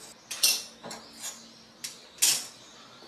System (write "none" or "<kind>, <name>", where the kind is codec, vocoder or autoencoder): none